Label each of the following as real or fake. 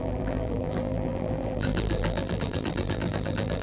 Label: fake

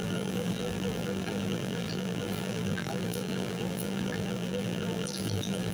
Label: fake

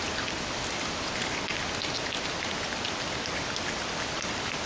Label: real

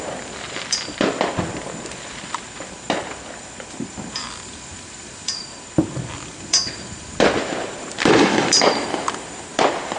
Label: fake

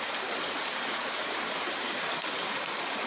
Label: fake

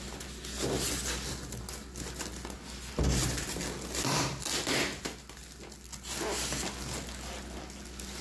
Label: real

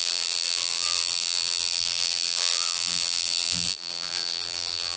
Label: fake